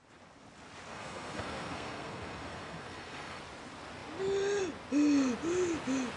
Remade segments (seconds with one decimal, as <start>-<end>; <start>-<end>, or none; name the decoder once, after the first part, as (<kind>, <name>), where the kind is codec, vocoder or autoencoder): 0.9-3.4 (codec, SNAC)